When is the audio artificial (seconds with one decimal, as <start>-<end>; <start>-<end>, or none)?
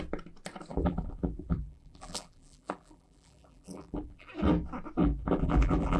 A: 0.7-4.3; 5.0-6.0